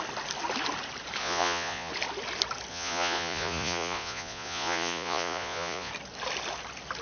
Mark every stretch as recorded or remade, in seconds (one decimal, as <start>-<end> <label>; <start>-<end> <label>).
0.0-1.2 recorded; 1.2-1.9 remade; 1.9-2.7 recorded; 2.7-5.9 remade; 5.9-7.0 recorded